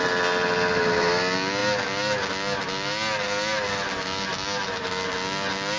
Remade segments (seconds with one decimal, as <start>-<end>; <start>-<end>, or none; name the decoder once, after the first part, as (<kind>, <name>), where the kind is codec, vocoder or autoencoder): none